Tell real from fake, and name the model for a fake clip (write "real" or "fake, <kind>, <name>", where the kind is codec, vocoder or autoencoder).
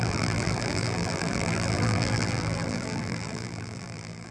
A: fake, vocoder, BigVGAN v2